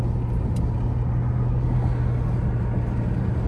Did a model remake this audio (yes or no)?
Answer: no